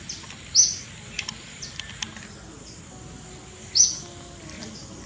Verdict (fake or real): real